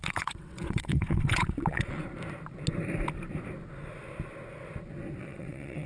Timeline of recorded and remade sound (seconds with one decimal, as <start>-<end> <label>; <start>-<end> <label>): 0.0-2.0 remade; 2.0-5.2 recorded; 5.2-5.9 remade

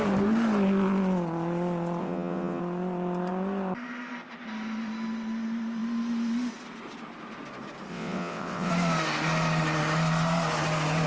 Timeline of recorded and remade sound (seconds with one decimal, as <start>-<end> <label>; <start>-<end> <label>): 0.0-2.0 recorded; 2.0-2.6 remade; 2.6-7.9 recorded; 7.9-8.7 remade; 8.7-11.1 recorded

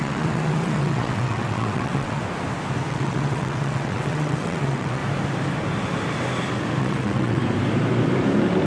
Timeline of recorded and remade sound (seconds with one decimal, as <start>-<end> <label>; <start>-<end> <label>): 0.0-2.2 remade; 2.2-2.9 recorded; 2.9-5.0 remade; 5.0-6.8 recorded; 6.8-7.4 remade; 7.4-8.7 recorded